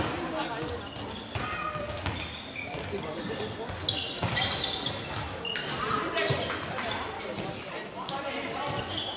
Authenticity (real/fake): real